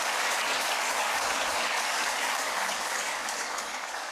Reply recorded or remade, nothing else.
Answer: remade